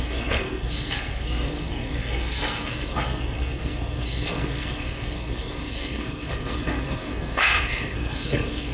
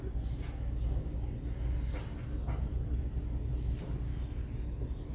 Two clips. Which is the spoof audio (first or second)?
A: first